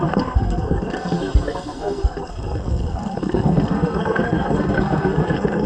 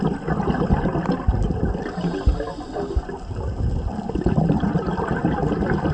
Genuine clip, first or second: second